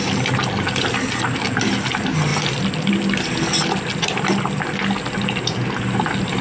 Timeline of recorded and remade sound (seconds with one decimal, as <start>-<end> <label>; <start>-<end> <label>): 0.0-6.4 recorded